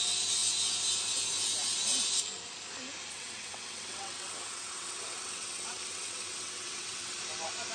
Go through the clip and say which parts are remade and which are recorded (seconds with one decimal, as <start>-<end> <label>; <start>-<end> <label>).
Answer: 0.0-3.1 recorded; 3.1-7.2 remade; 7.2-7.7 recorded